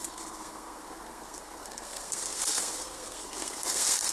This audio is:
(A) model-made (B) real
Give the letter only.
A